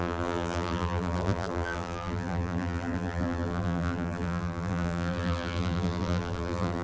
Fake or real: fake